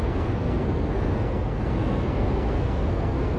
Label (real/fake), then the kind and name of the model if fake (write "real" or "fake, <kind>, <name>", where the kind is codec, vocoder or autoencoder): fake, codec, SNAC